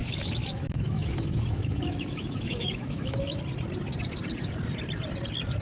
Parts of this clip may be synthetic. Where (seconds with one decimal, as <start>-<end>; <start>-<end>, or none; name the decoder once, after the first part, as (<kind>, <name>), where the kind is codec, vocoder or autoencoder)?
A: 0.0-3.4 (autoencoder, DAC-VAE)